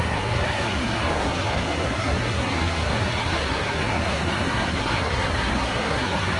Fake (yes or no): yes